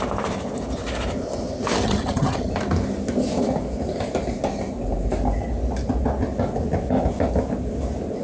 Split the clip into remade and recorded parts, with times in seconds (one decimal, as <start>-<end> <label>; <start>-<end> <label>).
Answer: 0.0-1.8 recorded; 1.8-2.5 remade; 2.5-8.2 recorded